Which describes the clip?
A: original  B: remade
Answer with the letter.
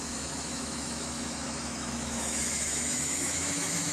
B